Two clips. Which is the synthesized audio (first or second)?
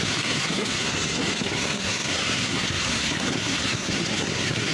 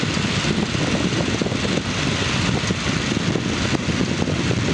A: first